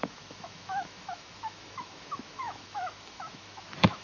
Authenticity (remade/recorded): remade